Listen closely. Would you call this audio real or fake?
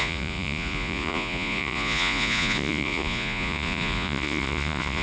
fake